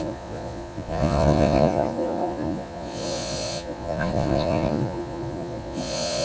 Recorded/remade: remade